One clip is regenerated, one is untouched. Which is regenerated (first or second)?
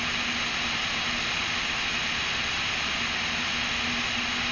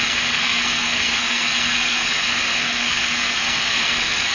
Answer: second